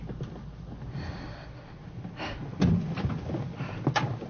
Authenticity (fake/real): real